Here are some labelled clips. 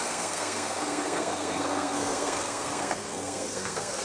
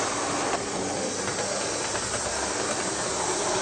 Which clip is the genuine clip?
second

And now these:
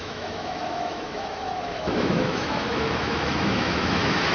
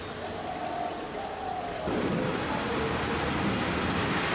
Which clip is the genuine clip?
second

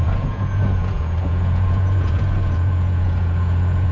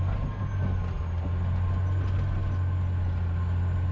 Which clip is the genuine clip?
second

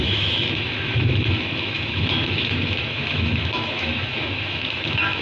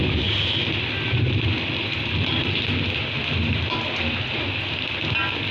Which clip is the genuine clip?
second